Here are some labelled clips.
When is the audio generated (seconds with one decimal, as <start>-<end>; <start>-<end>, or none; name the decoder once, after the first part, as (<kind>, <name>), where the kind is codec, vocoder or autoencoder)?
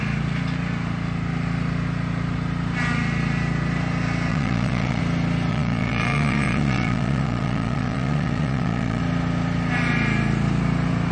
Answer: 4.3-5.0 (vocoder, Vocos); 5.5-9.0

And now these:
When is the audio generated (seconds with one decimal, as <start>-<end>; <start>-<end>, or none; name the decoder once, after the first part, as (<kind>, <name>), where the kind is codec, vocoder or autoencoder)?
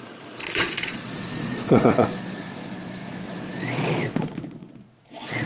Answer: 0.0-5.5 (vocoder, Vocos)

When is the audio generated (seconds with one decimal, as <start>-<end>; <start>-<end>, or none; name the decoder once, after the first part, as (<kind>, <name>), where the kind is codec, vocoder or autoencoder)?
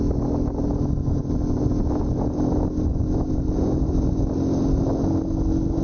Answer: none